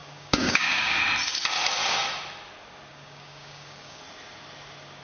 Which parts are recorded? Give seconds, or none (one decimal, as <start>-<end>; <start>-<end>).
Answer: 1.0-2.9; 4.0-5.0